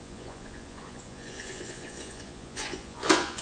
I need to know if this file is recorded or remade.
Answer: remade